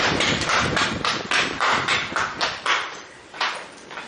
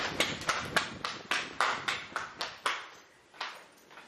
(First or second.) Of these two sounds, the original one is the second